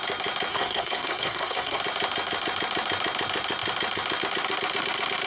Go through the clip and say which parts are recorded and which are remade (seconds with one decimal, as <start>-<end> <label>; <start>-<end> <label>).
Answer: 0.0-0.5 recorded; 0.5-1.8 remade; 1.8-5.3 recorded